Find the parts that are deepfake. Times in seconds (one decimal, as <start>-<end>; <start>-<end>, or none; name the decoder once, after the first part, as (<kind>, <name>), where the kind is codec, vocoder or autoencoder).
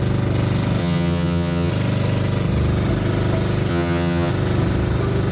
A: 0.8-1.7 (vocoder, HiFi-GAN); 3.7-4.3